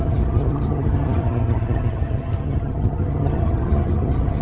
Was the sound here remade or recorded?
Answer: remade